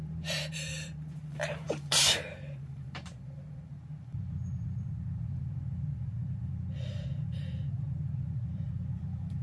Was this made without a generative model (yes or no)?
no